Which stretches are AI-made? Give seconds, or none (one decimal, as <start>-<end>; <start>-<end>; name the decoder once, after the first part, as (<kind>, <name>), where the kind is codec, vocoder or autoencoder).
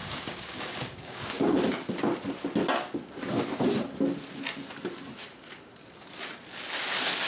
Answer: 0.0-1.6 (codec, DAC)